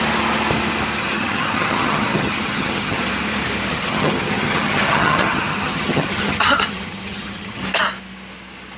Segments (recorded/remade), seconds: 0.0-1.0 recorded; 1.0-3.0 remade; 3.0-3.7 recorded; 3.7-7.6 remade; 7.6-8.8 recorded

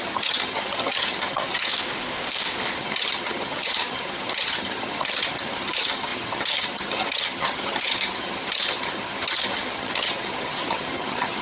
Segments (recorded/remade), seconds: 0.0-1.7 remade; 1.7-2.8 recorded; 2.8-11.4 remade

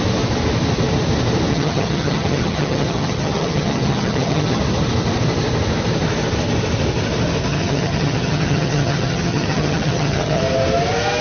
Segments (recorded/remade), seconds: 0.0-1.5 recorded; 1.5-4.6 remade; 4.6-7.5 recorded; 7.5-10.4 remade; 10.4-11.2 recorded

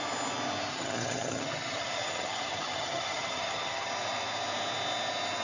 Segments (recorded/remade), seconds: 0.0-0.7 recorded; 0.7-3.9 remade; 3.9-5.4 recorded

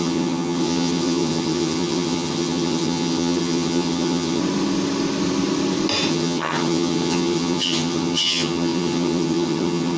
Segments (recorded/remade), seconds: 0.0-4.4 remade; 4.4-6.1 recorded; 6.1-10.0 remade

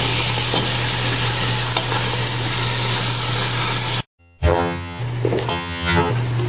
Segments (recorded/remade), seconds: 0.0-4.2 recorded; 4.2-5.0 remade; 5.0-5.5 recorded; 5.5-6.1 remade; 6.1-6.5 recorded

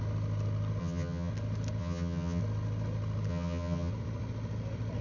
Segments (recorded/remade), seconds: 0.0-0.8 recorded; 0.8-1.3 remade; 1.3-1.8 recorded; 1.8-2.4 remade; 2.4-3.3 recorded; 3.3-3.9 remade; 3.9-5.0 recorded